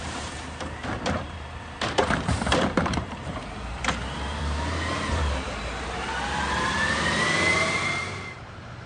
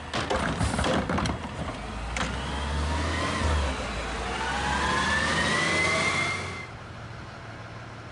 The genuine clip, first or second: second